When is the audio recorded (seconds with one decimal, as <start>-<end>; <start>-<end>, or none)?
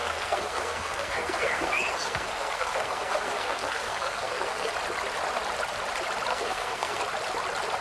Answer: 4.7-6.3; 7.0-7.8